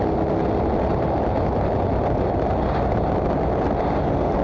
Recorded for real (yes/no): yes